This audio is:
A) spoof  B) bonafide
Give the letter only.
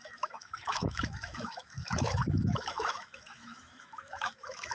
A